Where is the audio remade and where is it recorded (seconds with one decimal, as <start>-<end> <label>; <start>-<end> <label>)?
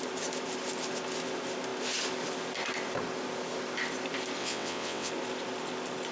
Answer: 0.0-4.4 recorded; 4.4-5.1 remade; 5.1-6.1 recorded